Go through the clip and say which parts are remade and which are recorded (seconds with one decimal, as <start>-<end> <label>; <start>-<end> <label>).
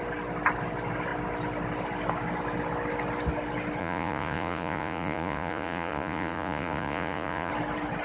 0.0-3.8 recorded; 3.8-7.5 remade; 7.5-8.0 recorded